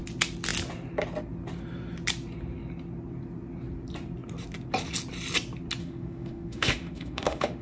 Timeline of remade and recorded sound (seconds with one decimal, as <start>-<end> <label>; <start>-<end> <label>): 0.0-5.8 recorded; 5.8-7.6 remade